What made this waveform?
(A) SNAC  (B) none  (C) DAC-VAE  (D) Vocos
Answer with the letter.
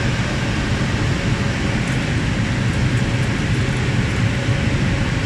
B